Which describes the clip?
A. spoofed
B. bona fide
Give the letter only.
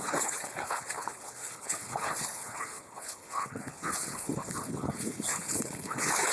A